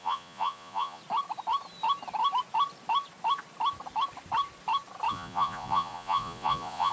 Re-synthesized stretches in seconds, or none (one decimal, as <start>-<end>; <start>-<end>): 0.0-1.0; 5.1-6.9